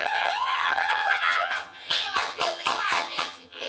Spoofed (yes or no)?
yes